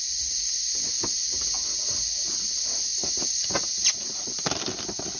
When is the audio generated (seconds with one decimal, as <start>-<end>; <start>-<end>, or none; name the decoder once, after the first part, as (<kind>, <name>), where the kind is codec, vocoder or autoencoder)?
none